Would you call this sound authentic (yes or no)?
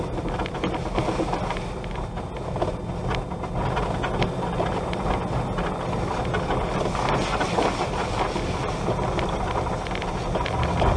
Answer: yes